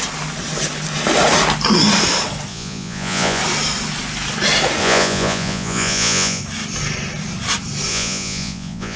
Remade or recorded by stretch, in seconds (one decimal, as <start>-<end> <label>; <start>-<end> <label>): 0.0-2.5 recorded; 2.5-3.4 remade; 3.4-4.8 recorded; 4.8-6.4 remade; 6.4-7.9 recorded; 7.9-9.0 remade